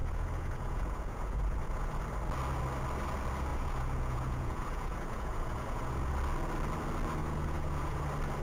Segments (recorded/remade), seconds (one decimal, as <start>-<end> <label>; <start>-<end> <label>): 0.0-2.0 remade; 2.0-3.5 recorded; 3.5-6.1 remade; 6.1-7.2 recorded; 7.2-8.0 remade; 8.0-8.4 recorded